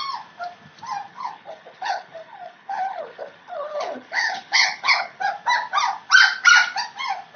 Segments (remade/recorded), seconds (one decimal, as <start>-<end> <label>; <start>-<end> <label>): 0.0-1.1 recorded; 1.1-5.2 remade; 5.2-7.4 recorded